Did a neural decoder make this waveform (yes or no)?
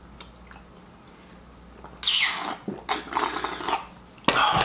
no